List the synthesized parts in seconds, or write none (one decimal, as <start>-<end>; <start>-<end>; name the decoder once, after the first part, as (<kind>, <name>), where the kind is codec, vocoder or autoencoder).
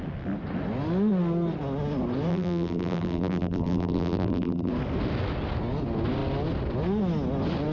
2.3-4.7 (vocoder, BigVGAN v2)